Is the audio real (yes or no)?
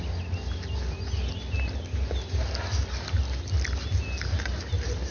yes